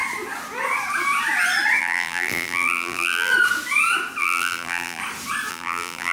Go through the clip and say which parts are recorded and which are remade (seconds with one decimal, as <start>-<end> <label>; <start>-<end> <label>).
0.0-1.8 recorded; 1.8-3.3 remade; 3.3-4.2 recorded; 4.2-5.0 remade; 5.0-5.5 recorded; 5.5-6.1 remade